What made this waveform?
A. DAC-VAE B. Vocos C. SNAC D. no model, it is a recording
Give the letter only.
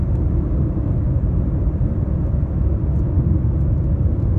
D